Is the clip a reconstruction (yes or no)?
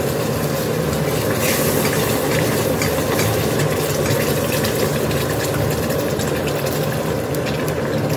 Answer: no